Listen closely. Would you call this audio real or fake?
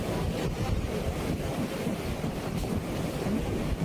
real